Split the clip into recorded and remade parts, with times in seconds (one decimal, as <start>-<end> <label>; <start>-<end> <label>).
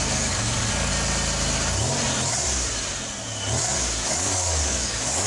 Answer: 0.0-0.9 remade; 0.9-4.1 recorded; 4.1-5.3 remade